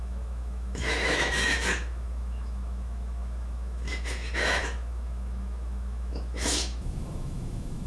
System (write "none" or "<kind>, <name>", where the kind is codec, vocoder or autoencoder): autoencoder, DAC-VAE